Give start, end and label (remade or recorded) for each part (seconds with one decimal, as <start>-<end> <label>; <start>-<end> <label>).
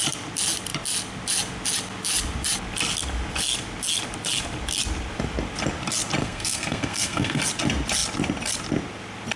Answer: 0.0-6.2 recorded; 6.2-7.4 remade; 7.4-9.4 recorded